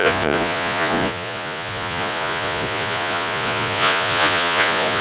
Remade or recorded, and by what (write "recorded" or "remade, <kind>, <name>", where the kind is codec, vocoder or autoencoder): remade, vocoder, Vocos